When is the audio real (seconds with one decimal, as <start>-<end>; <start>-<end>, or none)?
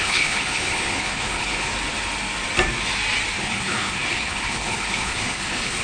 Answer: 1.7-3.4